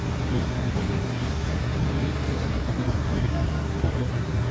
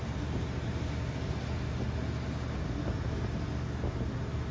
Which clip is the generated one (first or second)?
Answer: first